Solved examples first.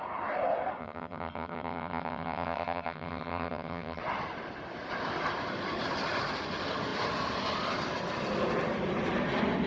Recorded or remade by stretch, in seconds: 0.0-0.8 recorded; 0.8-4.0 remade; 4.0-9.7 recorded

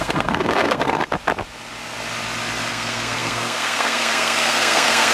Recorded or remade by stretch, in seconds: 0.0-1.1 remade; 1.1-2.7 recorded; 2.7-5.1 remade

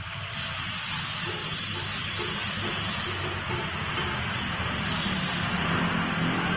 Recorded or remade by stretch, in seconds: 0.0-6.6 recorded

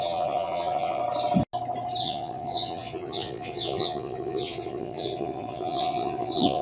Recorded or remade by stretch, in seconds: 0.0-1.0 remade; 1.0-2.0 recorded; 2.0-6.6 remade